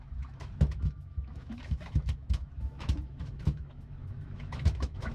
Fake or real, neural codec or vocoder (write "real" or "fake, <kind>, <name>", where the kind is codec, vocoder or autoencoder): fake, autoencoder, DAC-VAE